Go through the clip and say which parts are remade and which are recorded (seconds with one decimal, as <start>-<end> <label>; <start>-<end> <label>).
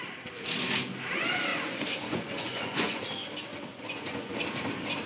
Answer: 0.0-1.5 recorded; 1.5-3.0 remade; 3.0-3.7 recorded; 3.7-4.4 remade; 4.4-5.1 recorded